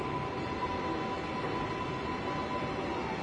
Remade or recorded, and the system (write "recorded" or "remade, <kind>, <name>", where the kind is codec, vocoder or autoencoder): recorded